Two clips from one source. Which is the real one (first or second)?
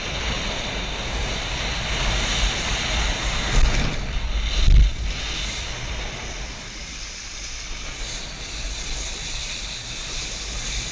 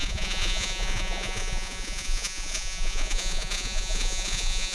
first